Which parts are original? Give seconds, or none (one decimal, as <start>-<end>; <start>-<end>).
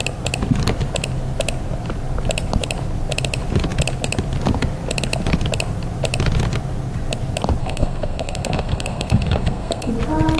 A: 0.0-7.6; 9.9-10.4